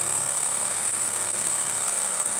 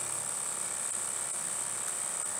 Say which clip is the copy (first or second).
first